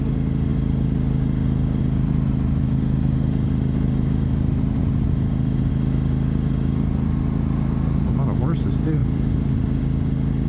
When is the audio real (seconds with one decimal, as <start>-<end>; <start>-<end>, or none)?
0.0-10.5

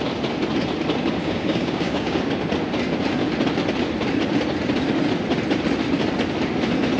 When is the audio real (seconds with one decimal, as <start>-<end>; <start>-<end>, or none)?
0.0-1.2; 2.2-7.0

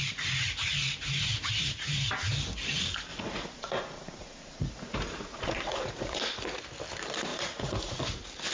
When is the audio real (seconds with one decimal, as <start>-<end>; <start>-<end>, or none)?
0.0-3.1; 6.2-7.3; 8.0-8.5

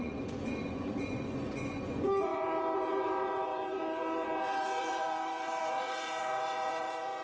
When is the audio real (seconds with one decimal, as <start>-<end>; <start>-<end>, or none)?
none